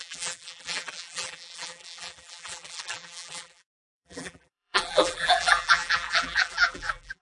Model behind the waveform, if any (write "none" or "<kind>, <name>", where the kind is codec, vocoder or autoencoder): vocoder, BigVGAN v2